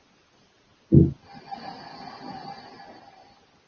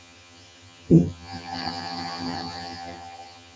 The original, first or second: first